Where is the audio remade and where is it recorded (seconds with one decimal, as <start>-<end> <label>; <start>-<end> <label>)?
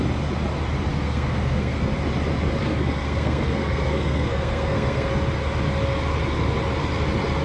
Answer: 0.0-0.9 recorded; 0.9-1.9 remade; 1.9-2.6 recorded; 2.6-5.1 remade; 5.1-7.4 recorded